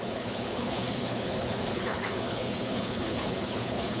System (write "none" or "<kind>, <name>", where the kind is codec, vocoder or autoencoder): codec, HILCodec